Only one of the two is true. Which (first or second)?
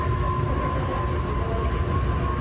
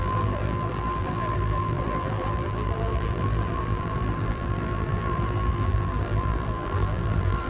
first